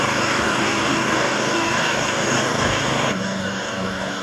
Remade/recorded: remade